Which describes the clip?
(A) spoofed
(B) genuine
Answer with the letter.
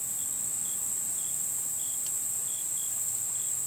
B